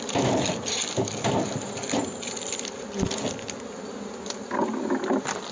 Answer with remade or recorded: recorded